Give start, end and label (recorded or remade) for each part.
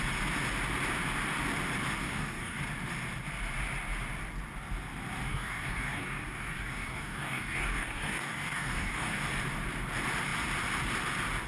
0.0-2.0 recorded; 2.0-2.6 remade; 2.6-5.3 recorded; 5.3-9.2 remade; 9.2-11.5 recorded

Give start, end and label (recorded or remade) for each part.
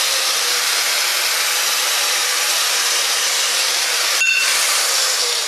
0.0-1.1 remade; 1.1-1.8 recorded; 1.8-5.5 remade